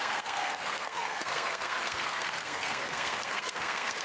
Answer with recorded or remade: remade